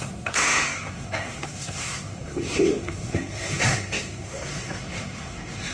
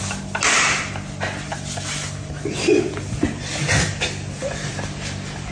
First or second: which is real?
second